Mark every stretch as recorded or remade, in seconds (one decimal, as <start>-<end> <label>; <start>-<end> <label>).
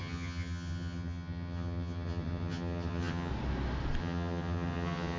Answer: 0.0-3.3 remade; 3.3-4.0 recorded; 4.0-5.2 remade